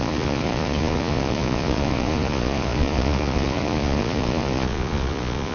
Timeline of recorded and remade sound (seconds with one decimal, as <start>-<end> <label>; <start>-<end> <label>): 0.0-5.5 remade